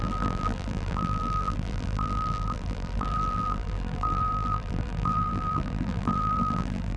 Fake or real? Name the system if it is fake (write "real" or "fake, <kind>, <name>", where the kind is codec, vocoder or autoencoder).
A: fake, vocoder, BigVGAN v2